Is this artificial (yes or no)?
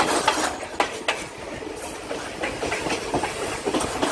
no